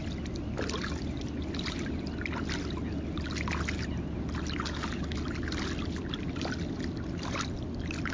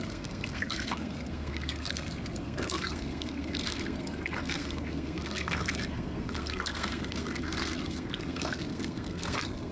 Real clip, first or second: first